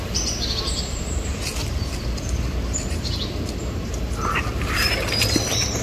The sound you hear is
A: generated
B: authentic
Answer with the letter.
A